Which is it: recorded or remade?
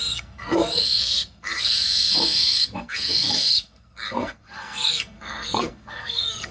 remade